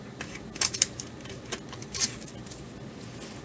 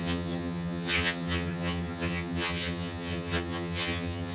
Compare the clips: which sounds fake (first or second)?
second